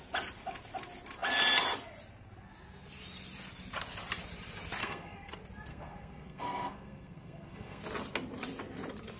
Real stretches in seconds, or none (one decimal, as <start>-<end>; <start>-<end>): 0.0-4.8; 5.3-5.7; 7.8-9.2